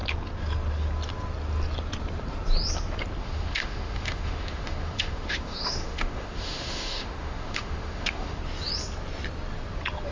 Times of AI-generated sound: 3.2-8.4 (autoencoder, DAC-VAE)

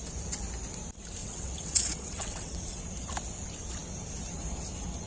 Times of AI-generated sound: 1.2-2.8 (vocoder, WaveNeXt)

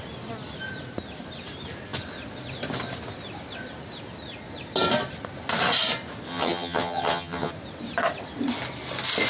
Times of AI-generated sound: 6.3-7.5 (vocoder, HiFi-GAN)

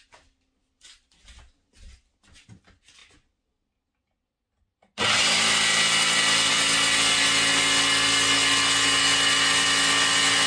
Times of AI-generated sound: none

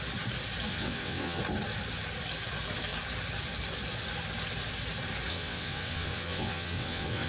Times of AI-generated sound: 0.7-1.4 (vocoder, WaveNeXt); 5.3-7.3

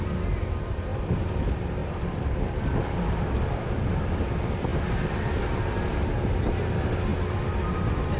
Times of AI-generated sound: 0.9-1.4 (vocoder, BigVGAN v2); 1.8-3.7